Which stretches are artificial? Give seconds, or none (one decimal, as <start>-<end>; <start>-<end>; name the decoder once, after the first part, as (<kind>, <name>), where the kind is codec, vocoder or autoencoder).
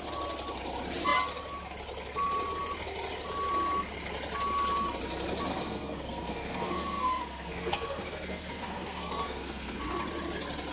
5.5-9.8 (codec, SNAC)